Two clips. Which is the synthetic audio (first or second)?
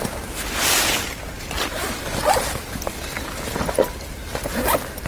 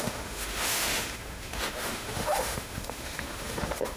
second